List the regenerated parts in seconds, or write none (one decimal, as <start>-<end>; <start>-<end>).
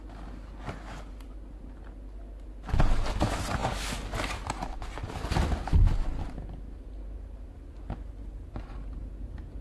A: none